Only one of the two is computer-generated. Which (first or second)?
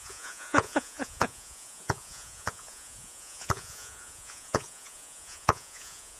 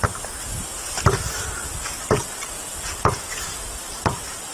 first